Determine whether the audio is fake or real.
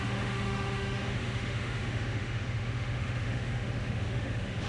fake